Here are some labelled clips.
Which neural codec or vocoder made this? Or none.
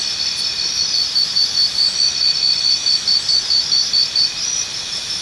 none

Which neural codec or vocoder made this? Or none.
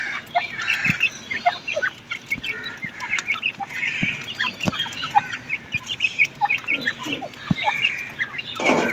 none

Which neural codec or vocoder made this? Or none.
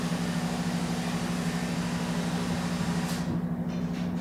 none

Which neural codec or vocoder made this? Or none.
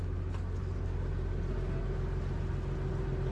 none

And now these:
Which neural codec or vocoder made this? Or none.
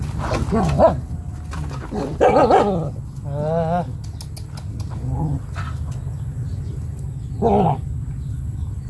none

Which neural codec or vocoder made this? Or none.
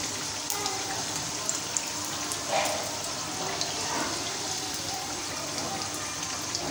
none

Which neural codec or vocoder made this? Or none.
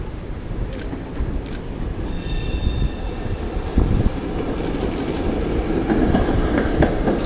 vocoder, BigVGAN v2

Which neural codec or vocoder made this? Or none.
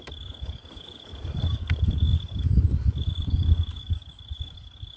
codec, DAC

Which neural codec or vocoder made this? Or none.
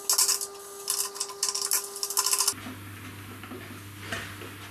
none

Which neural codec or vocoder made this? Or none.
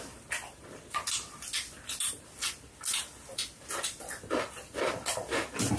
none